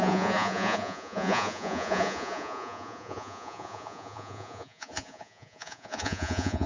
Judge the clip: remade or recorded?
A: remade